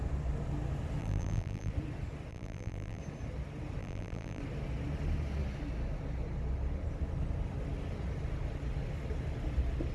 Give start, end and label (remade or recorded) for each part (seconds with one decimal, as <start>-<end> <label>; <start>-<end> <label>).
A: 0.0-1.0 recorded; 1.0-1.7 remade; 1.7-2.3 recorded; 2.3-3.0 remade; 3.0-3.8 recorded; 3.8-4.4 remade; 4.4-9.9 recorded